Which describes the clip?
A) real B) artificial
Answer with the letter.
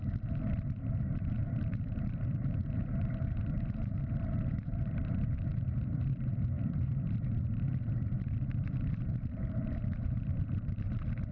B